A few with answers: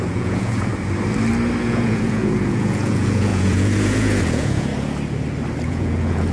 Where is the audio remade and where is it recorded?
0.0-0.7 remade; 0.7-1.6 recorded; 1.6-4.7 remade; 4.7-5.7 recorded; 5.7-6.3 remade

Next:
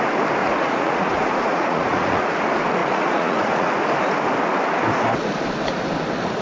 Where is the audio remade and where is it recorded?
0.0-0.4 recorded; 0.4-2.4 remade; 2.4-2.8 recorded; 2.8-3.7 remade; 3.7-6.4 recorded